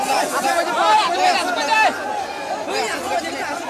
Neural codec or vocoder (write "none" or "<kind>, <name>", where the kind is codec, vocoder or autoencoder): none